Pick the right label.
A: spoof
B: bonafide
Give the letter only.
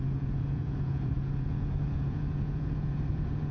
A